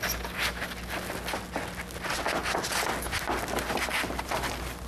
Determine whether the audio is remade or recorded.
recorded